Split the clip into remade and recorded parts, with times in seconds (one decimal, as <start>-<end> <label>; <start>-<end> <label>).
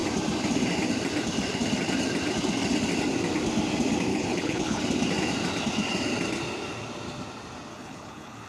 0.0-4.1 recorded; 4.1-4.8 remade; 4.8-7.7 recorded; 7.7-8.5 remade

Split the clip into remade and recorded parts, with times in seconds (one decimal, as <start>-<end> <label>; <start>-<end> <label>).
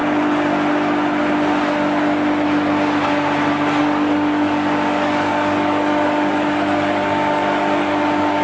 0.0-3.8 recorded; 3.8-8.4 remade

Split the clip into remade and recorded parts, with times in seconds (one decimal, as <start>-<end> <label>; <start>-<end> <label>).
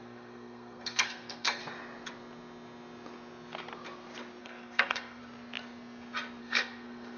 0.0-1.6 remade; 1.6-4.4 recorded; 4.4-5.2 remade; 5.2-6.4 recorded; 6.4-7.2 remade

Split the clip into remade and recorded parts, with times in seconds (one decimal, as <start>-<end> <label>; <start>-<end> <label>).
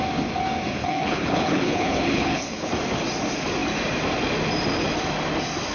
0.0-0.8 recorded; 0.8-2.7 remade; 2.7-5.7 recorded